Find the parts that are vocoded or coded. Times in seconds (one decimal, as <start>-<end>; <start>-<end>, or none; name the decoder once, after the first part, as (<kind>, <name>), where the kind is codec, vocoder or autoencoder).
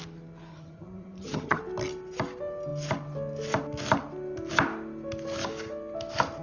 0.5-1.6 (vocoder, HiFi-GAN)